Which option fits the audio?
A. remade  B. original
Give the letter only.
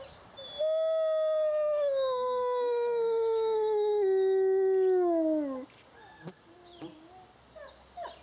B